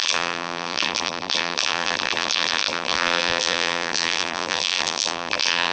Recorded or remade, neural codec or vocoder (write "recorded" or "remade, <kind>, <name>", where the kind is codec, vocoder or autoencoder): remade, vocoder, BigVGAN v2